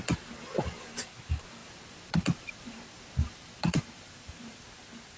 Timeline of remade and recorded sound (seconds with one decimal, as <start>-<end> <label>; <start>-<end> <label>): 0.0-1.6 recorded; 1.6-4.7 remade; 4.7-5.2 recorded